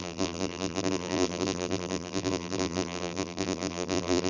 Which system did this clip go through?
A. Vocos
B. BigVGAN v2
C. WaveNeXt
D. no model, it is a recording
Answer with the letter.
B